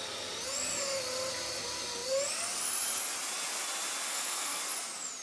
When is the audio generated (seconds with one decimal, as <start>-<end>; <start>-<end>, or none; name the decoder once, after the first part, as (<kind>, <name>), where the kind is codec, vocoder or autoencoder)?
4.1-4.6 (codec, SNAC)